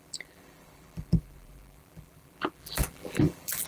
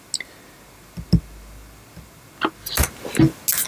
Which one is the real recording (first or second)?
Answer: second